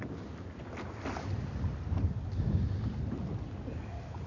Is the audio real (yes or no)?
yes